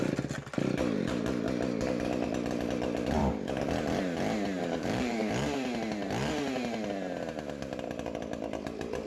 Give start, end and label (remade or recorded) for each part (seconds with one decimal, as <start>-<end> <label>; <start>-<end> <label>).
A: 0.0-3.2 recorded; 3.2-3.7 remade; 3.7-4.6 recorded; 4.6-5.3 remade; 5.3-9.1 recorded